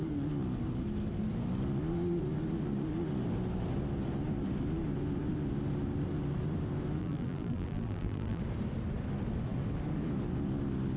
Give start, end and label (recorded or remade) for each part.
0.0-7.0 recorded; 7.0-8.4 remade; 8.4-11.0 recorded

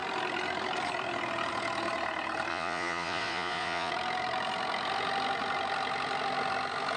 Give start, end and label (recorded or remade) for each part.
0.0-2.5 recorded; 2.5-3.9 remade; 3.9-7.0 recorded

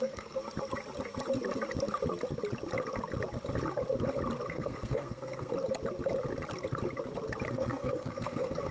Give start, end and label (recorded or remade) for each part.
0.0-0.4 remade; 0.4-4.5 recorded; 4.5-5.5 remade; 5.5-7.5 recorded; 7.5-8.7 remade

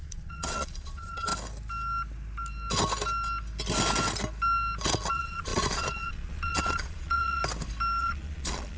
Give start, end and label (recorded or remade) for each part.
0.0-1.3 remade; 1.3-5.1 recorded; 5.1-7.4 remade; 7.4-8.0 recorded; 8.0-8.8 remade